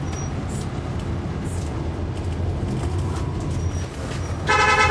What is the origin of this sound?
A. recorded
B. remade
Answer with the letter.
A